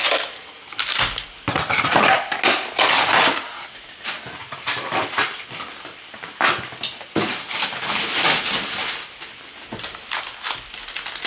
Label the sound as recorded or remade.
recorded